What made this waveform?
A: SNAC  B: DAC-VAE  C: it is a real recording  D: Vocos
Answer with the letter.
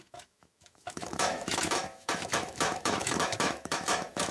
B